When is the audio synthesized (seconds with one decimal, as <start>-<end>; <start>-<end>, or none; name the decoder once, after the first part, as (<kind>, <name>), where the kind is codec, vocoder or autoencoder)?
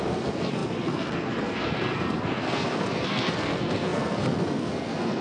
0.0-5.2 (codec, SNAC)